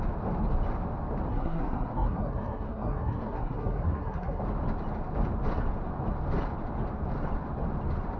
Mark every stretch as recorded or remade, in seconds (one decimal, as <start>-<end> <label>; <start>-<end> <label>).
0.0-1.3 recorded; 1.3-4.4 remade; 4.4-8.2 recorded